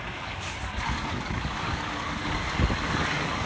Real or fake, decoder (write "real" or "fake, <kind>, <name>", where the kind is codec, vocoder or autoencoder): fake, codec, DAC